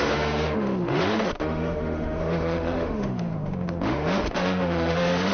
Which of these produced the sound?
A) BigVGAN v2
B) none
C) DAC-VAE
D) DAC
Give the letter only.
C